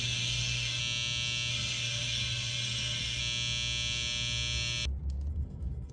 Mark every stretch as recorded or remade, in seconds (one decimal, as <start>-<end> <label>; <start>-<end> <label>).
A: 0.0-0.8 remade; 0.8-1.5 recorded; 1.5-3.2 remade; 3.2-5.3 recorded; 5.3-5.9 remade